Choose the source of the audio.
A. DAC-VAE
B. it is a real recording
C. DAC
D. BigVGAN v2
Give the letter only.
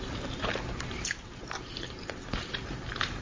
D